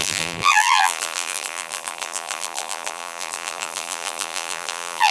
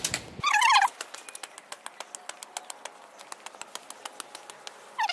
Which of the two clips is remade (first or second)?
first